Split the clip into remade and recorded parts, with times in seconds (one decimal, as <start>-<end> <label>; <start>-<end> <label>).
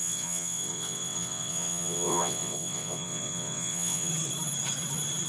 0.0-4.1 remade; 4.1-5.3 recorded